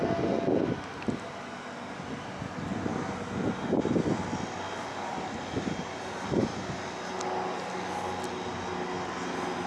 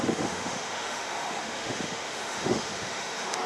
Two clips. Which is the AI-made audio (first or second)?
second